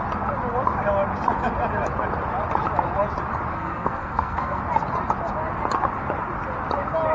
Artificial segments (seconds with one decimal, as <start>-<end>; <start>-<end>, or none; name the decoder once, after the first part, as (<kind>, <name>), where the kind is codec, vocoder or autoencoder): 3.5-4.6 (codec, SNAC)